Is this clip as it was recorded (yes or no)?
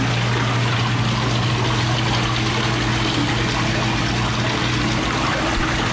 yes